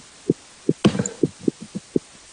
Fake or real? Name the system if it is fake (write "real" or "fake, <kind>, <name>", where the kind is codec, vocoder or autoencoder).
real